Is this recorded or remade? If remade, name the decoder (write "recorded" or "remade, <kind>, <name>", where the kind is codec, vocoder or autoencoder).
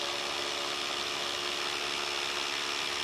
recorded